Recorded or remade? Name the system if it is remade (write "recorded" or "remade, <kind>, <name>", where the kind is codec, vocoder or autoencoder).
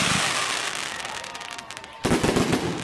recorded